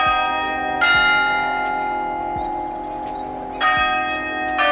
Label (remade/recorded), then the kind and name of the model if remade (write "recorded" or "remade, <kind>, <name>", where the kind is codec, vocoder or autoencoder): recorded